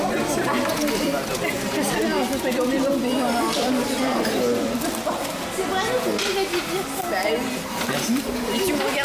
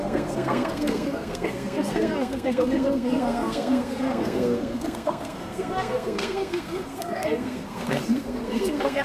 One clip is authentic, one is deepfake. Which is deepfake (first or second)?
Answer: second